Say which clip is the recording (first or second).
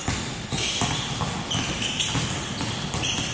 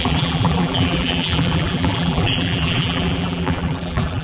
first